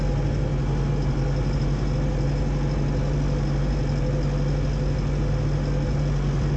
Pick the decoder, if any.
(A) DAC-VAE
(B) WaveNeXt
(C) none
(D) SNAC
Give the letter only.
C